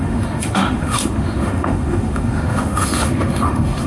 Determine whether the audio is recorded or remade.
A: remade